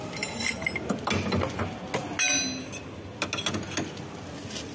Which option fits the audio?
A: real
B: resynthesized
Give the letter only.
A